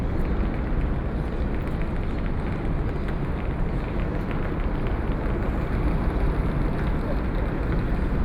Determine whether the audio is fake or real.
real